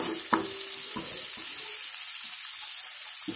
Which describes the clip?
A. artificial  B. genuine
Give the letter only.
B